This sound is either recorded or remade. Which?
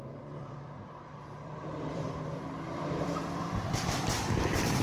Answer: remade